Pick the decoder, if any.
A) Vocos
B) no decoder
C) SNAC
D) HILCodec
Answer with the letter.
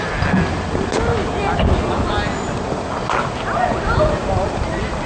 B